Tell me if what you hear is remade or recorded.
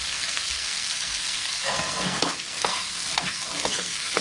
remade